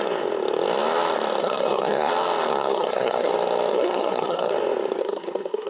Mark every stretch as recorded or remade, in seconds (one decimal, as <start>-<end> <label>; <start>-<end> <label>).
0.0-1.4 recorded; 1.4-2.1 remade; 2.1-2.5 recorded; 2.5-3.3 remade; 3.3-3.7 recorded; 3.7-4.5 remade; 4.5-5.0 recorded; 5.0-5.7 remade

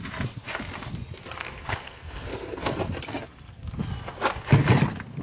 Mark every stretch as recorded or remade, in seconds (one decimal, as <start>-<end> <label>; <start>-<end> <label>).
0.0-1.4 recorded; 1.4-2.8 remade; 2.8-5.2 recorded

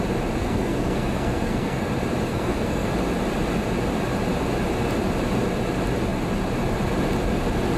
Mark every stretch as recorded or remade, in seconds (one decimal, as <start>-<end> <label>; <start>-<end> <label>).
0.0-0.4 recorded; 0.4-1.9 remade; 1.9-2.3 recorded; 2.3-2.9 remade; 2.9-7.8 recorded

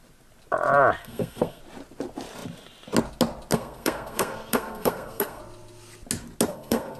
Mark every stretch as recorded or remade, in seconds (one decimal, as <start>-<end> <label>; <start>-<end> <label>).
0.0-1.0 recorded; 1.0-1.6 remade; 1.6-3.5 recorded; 3.5-5.4 remade; 5.4-6.5 recorded; 6.5-7.0 remade

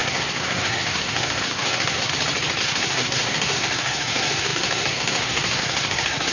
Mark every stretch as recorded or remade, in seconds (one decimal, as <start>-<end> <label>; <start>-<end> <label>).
0.0-2.1 remade; 2.1-2.6 recorded; 2.6-6.3 remade